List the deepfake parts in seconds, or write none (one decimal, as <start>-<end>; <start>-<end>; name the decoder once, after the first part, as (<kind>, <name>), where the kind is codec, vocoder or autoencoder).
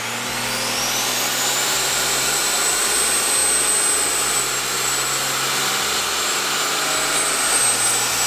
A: none